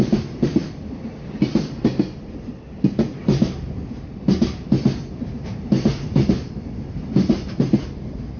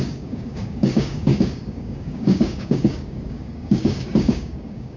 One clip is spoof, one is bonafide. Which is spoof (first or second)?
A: second